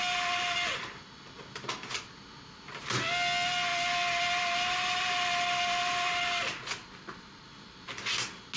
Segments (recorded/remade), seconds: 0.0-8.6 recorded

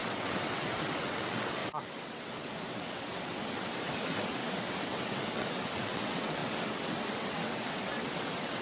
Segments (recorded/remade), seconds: 0.0-8.6 remade

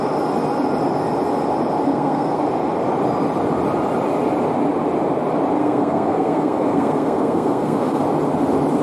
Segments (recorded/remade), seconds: 0.0-1.9 recorded; 1.9-2.4 remade; 2.4-5.6 recorded; 5.6-8.0 remade; 8.0-8.8 recorded